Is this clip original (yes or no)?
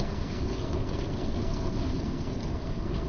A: no